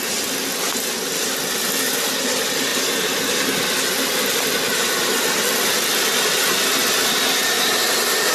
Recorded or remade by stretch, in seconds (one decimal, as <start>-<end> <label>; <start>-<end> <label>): 0.0-8.3 recorded